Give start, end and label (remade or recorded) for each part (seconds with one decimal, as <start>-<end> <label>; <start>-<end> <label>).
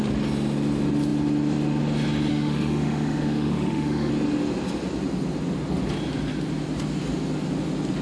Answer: 0.0-2.3 recorded; 2.3-4.1 remade; 4.1-8.0 recorded